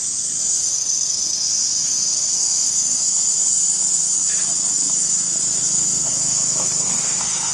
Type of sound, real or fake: fake